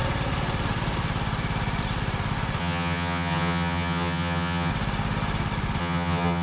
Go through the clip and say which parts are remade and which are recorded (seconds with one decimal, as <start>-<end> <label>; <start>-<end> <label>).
0.0-2.6 recorded; 2.6-4.7 remade; 4.7-5.8 recorded; 5.8-6.4 remade